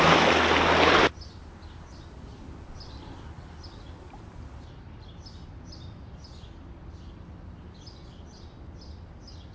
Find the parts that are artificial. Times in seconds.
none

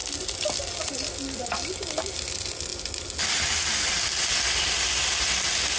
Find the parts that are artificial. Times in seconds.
none

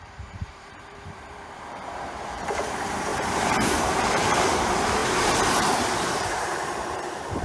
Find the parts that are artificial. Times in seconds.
0.0-7.4 (vocoder, BigVGAN v2)

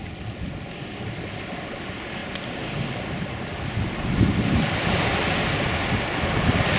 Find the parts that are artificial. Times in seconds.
none

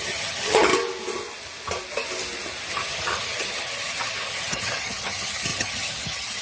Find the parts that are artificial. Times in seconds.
0.0-0.7 (vocoder, HiFi-GAN); 2.7-6.4